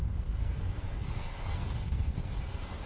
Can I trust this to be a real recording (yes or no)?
no